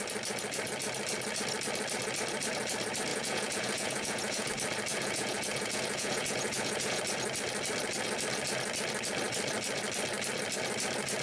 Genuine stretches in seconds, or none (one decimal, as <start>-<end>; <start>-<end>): 0.0-3.1; 4.5-4.9; 7.0-11.2

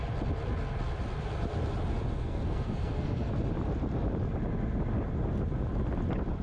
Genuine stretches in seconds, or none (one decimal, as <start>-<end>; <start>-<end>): 0.0-2.1; 3.3-6.4